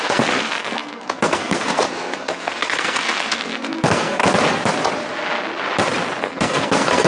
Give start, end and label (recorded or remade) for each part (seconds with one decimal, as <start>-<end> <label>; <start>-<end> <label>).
0.0-4.2 remade; 4.2-6.2 recorded; 6.2-7.1 remade